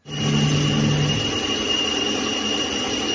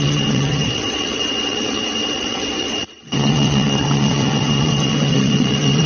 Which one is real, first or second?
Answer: first